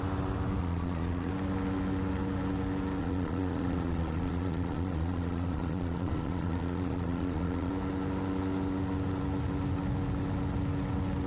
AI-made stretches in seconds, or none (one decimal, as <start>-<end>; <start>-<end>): 0.6-1.3; 3.0-7.7